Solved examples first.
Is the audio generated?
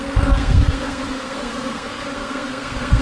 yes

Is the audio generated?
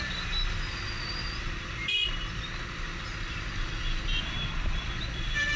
yes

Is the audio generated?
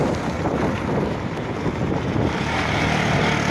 no